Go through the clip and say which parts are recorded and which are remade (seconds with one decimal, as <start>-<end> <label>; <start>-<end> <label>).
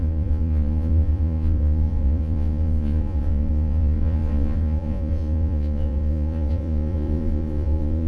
0.0-8.1 remade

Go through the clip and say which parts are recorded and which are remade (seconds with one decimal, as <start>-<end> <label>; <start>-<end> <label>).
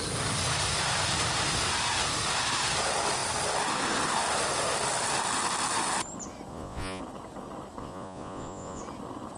0.0-6.5 recorded; 6.5-7.0 remade; 7.0-7.8 recorded; 7.8-8.8 remade; 8.8-9.4 recorded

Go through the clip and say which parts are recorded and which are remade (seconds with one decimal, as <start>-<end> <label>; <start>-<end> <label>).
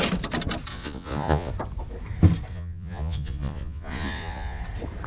0.0-0.7 recorded; 0.7-1.5 remade; 1.5-2.5 recorded; 2.5-4.6 remade; 4.6-5.1 recorded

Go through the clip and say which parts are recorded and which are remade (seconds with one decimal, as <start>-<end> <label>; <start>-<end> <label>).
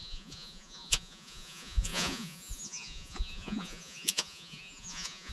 0.0-5.3 remade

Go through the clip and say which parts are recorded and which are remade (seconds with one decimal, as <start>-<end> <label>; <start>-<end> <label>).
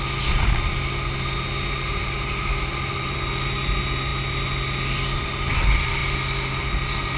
0.0-7.2 recorded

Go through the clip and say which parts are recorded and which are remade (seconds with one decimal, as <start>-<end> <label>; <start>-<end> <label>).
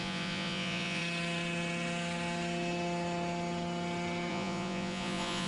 0.0-1.0 remade; 1.0-4.3 recorded; 4.3-5.5 remade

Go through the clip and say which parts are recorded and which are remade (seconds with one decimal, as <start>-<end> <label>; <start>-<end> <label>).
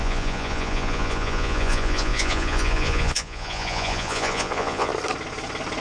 0.0-4.9 remade; 4.9-5.8 recorded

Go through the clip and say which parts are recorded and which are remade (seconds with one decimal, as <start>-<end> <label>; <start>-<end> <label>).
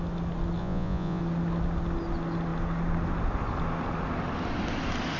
0.0-0.6 recorded; 0.6-1.2 remade; 1.2-5.2 recorded